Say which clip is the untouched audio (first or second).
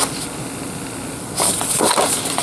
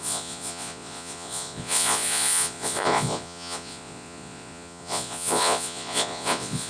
first